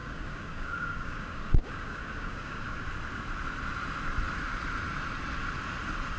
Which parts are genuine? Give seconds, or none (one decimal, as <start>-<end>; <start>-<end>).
2.8-6.2